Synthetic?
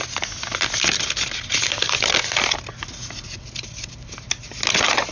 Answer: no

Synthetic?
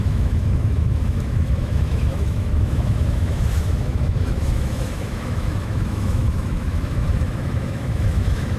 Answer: yes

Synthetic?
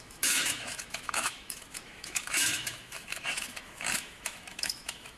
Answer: yes